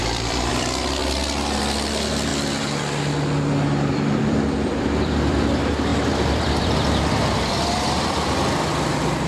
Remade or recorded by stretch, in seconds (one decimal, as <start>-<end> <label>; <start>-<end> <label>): 0.0-1.0 remade; 1.0-1.9 recorded; 1.9-2.3 remade; 2.3-3.9 recorded; 3.9-9.3 remade